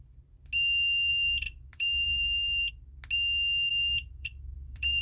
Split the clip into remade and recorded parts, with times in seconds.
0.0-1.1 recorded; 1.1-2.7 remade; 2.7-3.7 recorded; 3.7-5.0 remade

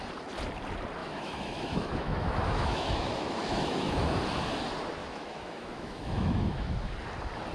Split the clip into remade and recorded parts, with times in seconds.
0.0-1.0 recorded; 1.0-4.2 remade; 4.2-5.0 recorded; 5.0-6.7 remade; 6.7-7.5 recorded

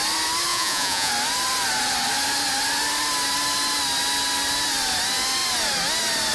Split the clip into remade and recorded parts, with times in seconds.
0.0-0.5 recorded; 0.5-1.1 remade; 1.1-6.3 recorded

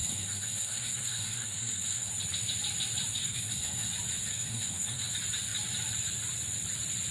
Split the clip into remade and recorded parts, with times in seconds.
0.0-2.1 remade; 2.1-3.2 recorded; 3.2-3.9 remade; 3.9-4.3 recorded; 4.3-5.1 remade; 5.1-7.1 recorded